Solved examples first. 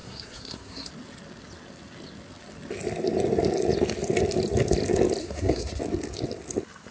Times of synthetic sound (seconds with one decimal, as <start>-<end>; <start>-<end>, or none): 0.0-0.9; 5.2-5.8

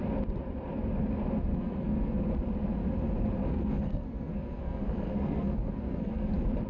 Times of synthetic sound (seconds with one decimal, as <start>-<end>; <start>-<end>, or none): 1.5-2.2; 3.4-6.3

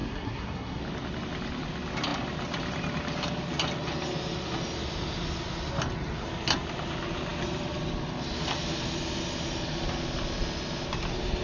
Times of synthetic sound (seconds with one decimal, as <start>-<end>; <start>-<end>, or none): 0.0-0.8